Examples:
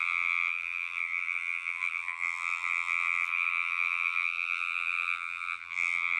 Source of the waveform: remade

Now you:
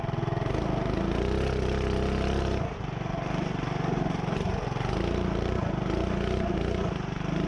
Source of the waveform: recorded